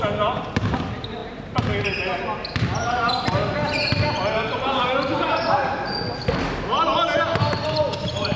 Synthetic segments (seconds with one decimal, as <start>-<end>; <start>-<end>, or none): none